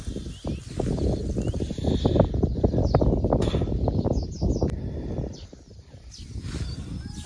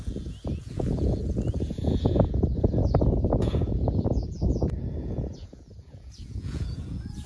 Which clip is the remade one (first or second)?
second